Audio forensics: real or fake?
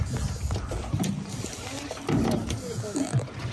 real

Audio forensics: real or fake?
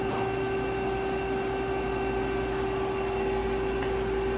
real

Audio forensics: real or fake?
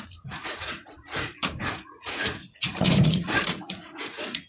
fake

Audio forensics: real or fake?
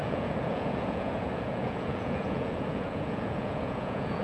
fake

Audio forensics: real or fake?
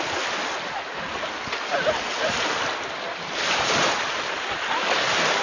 real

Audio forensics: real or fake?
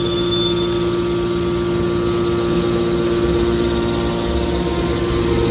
real